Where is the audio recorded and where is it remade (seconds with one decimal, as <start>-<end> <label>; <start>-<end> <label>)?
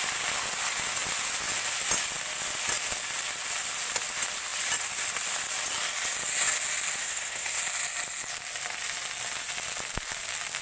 0.0-7.0 recorded; 7.0-7.6 remade; 7.6-10.6 recorded